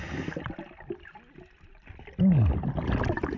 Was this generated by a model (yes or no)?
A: no